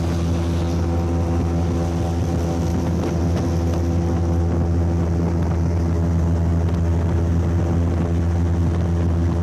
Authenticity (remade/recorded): recorded